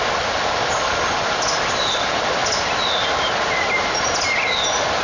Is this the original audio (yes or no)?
yes